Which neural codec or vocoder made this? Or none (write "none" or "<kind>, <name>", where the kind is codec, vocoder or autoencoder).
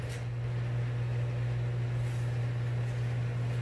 none